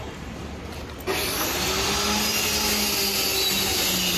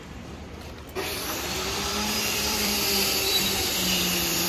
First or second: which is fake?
second